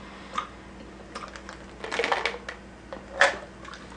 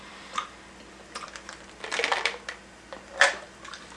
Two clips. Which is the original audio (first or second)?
first